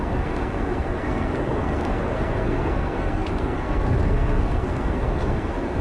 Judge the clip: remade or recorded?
remade